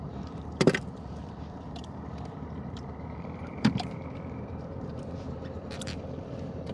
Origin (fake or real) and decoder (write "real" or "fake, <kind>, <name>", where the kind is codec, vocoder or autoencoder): fake, vocoder, BigVGAN v2